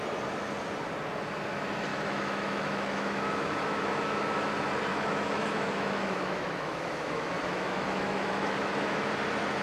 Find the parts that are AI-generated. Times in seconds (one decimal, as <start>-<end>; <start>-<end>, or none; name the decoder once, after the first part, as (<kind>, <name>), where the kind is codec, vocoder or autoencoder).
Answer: 1.9-4.5 (autoencoder, DAC-VAE); 4.9-9.1